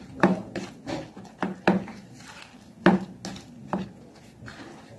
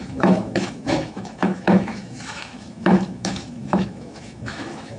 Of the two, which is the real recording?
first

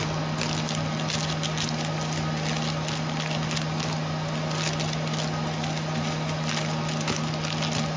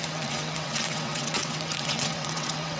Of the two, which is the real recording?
first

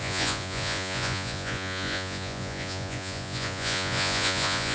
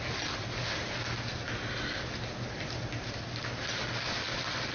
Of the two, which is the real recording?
second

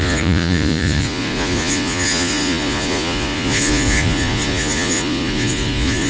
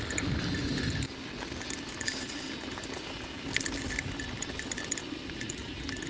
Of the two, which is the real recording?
second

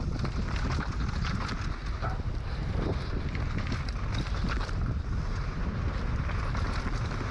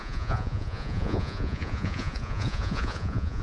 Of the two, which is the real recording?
first